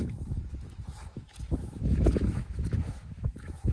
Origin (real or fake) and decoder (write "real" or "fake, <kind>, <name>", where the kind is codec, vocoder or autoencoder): fake, autoencoder, DAC-VAE